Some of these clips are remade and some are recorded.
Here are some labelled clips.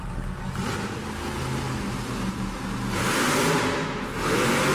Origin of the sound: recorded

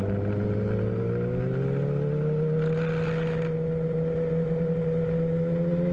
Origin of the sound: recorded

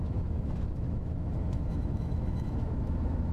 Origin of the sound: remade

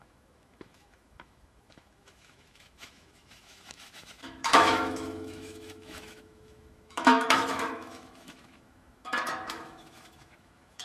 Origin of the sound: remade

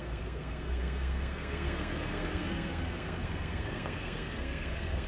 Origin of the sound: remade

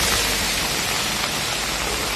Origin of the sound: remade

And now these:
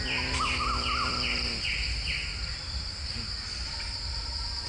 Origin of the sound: recorded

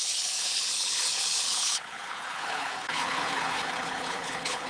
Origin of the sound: remade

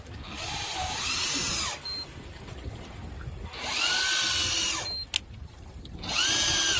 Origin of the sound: recorded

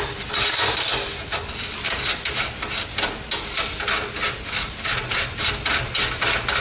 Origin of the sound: recorded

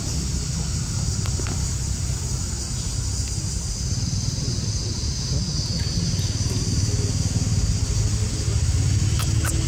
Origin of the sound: recorded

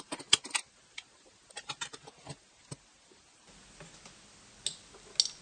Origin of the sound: recorded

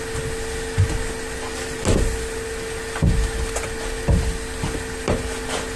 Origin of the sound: recorded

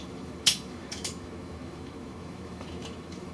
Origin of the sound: remade